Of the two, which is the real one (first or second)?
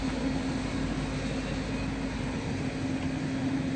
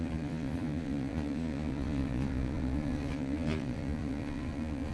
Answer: first